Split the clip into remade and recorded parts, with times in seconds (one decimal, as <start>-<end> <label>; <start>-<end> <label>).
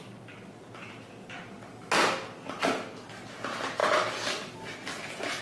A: 0.0-5.4 recorded